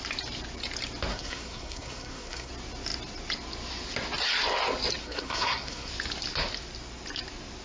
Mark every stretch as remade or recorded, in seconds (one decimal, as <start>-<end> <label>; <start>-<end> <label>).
0.0-1.1 recorded; 1.1-2.5 remade; 2.5-5.0 recorded; 5.0-5.9 remade; 5.9-7.6 recorded